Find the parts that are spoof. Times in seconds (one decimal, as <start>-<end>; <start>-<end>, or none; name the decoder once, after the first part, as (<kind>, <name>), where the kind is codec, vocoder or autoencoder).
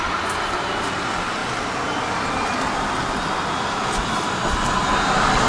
none